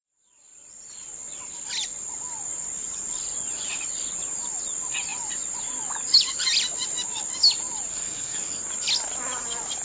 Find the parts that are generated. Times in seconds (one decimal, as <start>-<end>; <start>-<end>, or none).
7.9-8.6